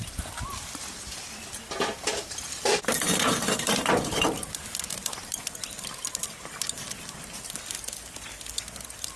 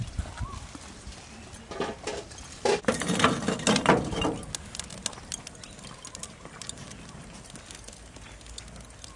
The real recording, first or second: second